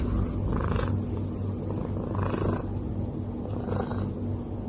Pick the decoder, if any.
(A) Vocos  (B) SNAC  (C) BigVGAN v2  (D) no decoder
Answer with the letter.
D